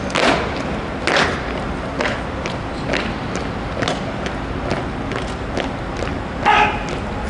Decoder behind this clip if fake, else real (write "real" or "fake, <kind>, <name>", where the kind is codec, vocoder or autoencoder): real